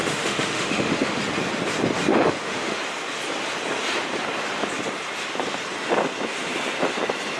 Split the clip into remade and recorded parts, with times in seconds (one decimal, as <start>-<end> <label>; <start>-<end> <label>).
0.0-1.2 remade; 1.2-2.1 recorded; 2.1-2.8 remade; 2.8-7.4 recorded